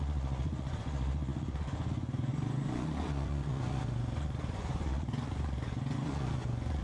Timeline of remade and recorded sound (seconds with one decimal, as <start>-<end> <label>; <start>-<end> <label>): 0.0-6.8 remade